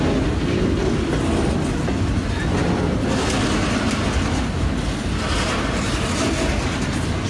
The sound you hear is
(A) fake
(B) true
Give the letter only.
B